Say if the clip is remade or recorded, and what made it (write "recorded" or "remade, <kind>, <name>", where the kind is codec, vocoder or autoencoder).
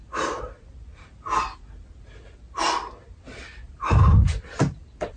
recorded